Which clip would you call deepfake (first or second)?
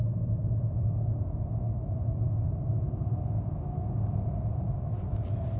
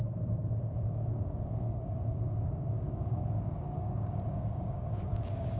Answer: second